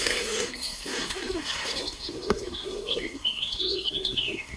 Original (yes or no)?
no